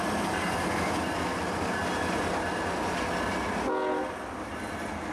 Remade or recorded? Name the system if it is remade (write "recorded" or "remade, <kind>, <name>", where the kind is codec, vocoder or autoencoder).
recorded